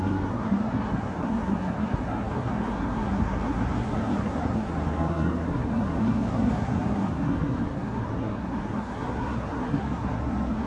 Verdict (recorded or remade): remade